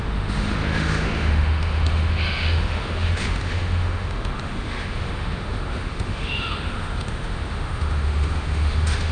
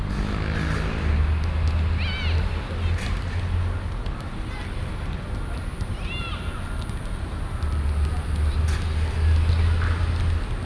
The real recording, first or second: second